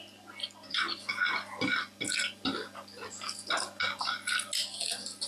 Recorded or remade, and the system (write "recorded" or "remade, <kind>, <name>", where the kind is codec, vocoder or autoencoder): recorded